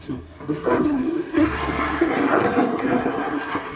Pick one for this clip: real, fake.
fake